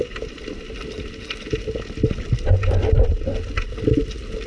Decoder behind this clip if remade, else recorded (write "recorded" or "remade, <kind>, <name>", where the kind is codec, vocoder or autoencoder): recorded